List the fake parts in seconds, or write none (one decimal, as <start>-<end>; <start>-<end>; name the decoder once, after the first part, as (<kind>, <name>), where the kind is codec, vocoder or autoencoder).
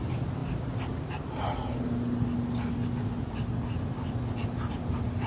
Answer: 4.4-5.3 (vocoder, BigVGAN v2)